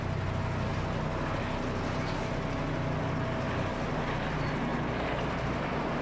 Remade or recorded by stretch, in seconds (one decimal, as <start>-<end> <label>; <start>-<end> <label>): 0.0-6.0 recorded